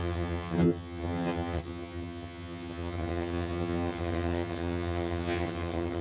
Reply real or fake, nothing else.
fake